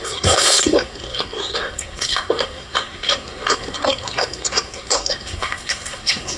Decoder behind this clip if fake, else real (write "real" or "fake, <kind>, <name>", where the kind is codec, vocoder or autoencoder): fake, codec, SNAC